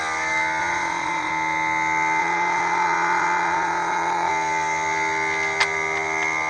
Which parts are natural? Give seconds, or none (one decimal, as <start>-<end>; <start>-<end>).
0.0-0.6; 1.3-2.2; 4.3-6.5